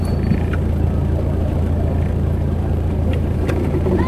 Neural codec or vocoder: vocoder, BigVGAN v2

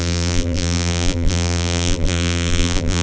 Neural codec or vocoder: vocoder, BigVGAN v2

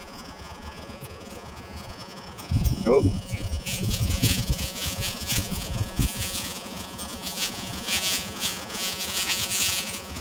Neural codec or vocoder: vocoder, Vocos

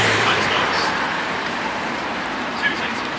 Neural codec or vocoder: vocoder, BigVGAN v2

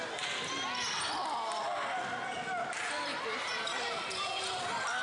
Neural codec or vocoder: none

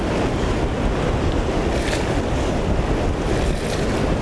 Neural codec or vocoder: none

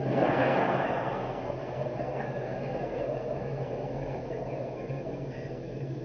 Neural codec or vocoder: codec, SNAC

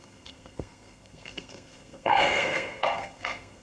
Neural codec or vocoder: codec, SNAC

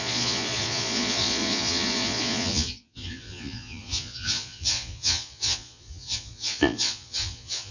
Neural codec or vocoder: vocoder, Vocos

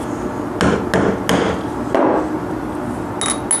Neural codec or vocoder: none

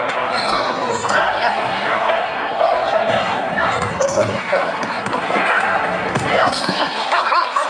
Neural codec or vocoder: codec, SNAC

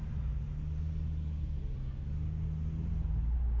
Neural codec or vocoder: none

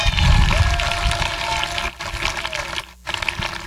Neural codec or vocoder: none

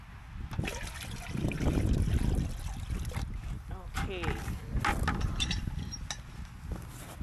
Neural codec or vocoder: none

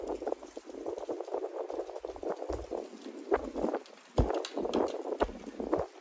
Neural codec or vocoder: none